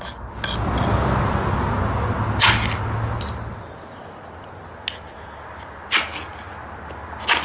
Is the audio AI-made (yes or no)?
no